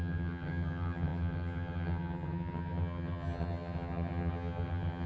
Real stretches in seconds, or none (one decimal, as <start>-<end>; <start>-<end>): none